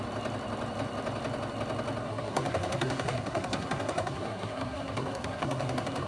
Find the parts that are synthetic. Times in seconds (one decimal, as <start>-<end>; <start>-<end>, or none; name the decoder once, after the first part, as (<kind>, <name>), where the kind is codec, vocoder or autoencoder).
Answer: 2.0-6.1 (codec, SNAC)